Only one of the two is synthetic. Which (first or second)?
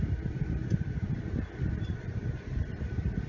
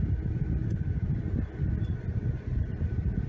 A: first